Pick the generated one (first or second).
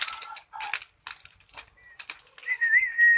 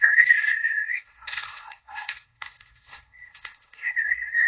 second